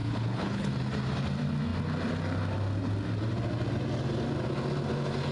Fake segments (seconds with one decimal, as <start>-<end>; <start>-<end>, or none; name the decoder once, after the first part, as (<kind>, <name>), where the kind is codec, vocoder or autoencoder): 0.0-0.7 (codec, HILCodec)